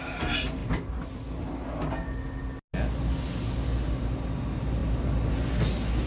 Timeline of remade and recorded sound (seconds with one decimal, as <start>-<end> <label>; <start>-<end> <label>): 0.0-6.1 recorded